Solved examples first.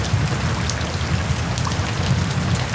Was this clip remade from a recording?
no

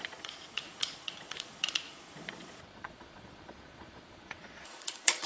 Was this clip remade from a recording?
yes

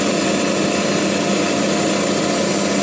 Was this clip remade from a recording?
no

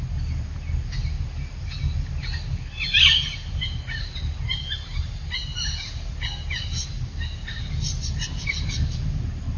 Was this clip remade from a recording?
no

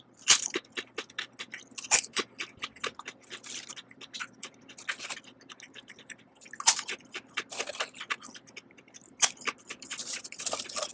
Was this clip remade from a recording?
no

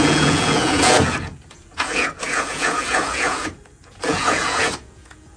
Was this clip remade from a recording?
yes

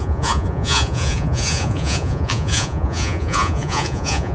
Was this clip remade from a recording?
yes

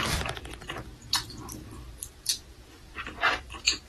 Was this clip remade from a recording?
no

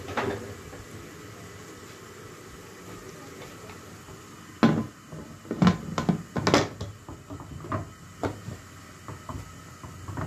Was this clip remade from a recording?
no